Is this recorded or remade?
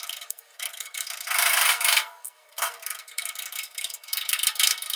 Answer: remade